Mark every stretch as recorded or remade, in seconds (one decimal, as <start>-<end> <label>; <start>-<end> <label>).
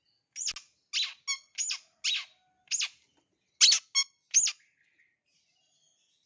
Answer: 0.0-6.3 recorded